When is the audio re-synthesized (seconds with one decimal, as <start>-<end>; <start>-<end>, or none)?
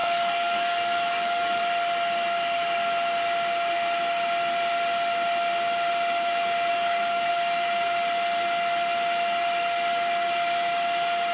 0.0-1.6; 6.7-7.3